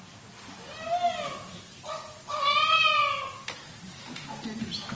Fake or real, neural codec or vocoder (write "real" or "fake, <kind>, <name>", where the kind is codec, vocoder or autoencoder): real